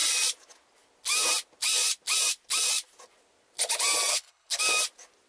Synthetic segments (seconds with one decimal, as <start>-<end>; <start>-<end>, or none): 4.1-4.6